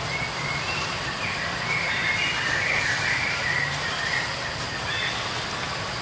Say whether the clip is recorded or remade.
recorded